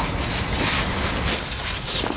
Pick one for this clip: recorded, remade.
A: recorded